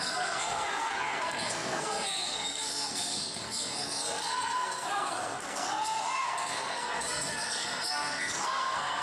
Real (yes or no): no